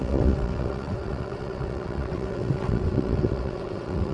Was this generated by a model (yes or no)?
yes